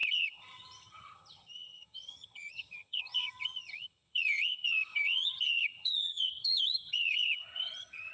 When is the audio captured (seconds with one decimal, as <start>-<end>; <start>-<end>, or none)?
none